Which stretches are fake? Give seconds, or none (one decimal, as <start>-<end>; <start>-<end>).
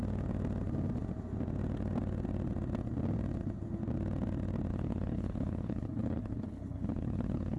4.7-7.6